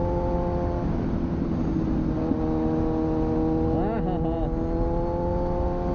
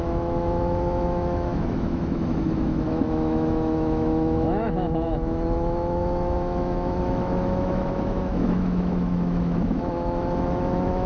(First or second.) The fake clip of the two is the second